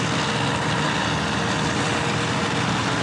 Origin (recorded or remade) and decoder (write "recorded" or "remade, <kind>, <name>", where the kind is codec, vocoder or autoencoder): recorded